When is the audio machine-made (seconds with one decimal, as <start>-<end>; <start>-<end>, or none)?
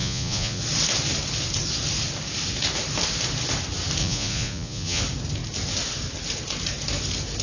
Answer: 0.0-0.6; 4.0-5.0